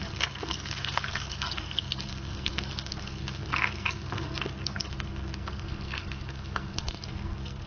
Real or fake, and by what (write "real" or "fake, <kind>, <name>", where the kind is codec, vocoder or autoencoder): fake, codec, SNAC